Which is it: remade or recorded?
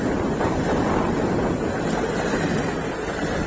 recorded